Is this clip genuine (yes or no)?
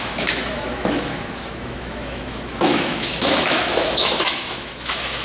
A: no